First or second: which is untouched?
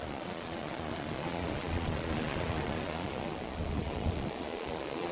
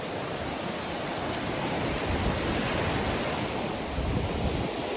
second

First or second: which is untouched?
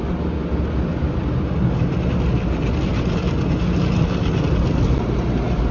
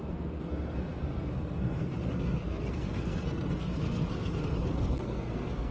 first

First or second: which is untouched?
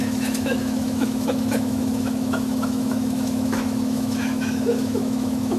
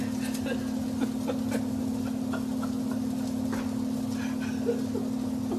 second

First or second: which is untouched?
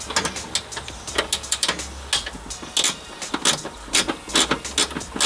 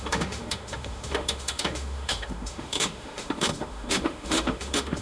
first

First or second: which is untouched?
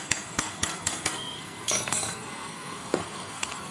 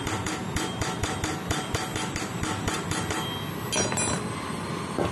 second